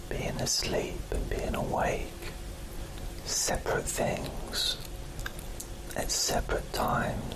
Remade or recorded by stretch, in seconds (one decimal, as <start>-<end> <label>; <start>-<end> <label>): 0.0-7.4 recorded